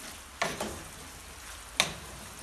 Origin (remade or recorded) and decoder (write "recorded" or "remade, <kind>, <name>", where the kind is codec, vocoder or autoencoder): recorded